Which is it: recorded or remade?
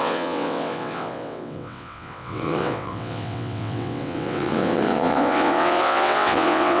remade